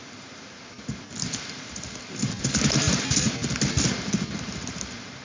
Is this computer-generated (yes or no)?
yes